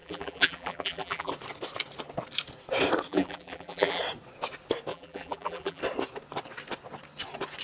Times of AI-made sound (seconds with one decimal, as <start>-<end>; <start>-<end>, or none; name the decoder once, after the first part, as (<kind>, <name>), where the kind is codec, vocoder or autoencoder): 0.0-1.3 (vocoder, BigVGAN v2); 3.1-4.0; 4.9-5.8